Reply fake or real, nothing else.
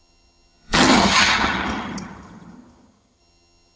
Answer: fake